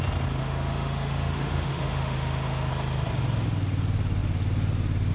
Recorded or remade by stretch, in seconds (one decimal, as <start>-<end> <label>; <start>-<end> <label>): 0.0-0.4 recorded; 0.4-2.7 remade; 2.7-5.1 recorded